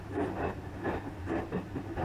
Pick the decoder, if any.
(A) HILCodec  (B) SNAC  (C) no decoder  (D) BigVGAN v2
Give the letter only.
C